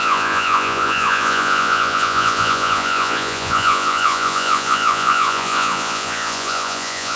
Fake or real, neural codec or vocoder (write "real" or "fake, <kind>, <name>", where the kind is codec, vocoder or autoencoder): fake, vocoder, Vocos